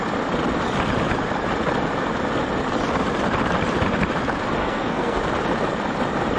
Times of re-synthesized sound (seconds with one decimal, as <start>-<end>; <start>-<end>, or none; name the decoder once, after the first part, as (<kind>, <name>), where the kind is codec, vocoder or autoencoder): 4.6-5.2 (codec, SNAC)